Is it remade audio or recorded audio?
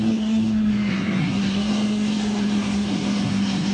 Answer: remade